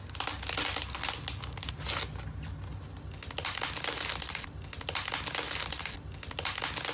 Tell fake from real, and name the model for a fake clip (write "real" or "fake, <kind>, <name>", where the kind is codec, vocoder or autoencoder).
real